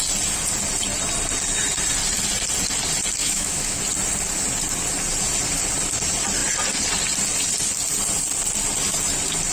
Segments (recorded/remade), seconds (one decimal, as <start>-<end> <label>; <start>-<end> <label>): 0.0-3.2 recorded; 3.2-3.8 remade; 3.8-9.5 recorded